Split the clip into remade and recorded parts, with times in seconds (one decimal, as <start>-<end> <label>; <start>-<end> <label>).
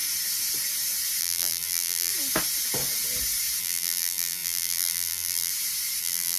0.0-1.2 recorded; 1.2-2.1 remade; 2.1-3.6 recorded; 3.6-5.5 remade; 5.5-6.0 recorded; 6.0-6.4 remade